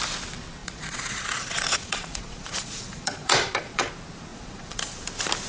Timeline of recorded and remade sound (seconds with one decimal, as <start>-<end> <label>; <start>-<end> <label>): 0.0-0.6 recorded; 0.6-3.9 remade; 3.9-4.3 recorded; 4.3-5.0 remade; 5.0-5.5 recorded